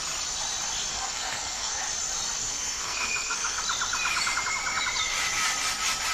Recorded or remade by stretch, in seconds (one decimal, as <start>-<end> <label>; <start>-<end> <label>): 0.0-0.9 recorded; 0.9-1.8 remade; 1.8-2.4 recorded; 2.4-3.6 remade; 3.6-6.1 recorded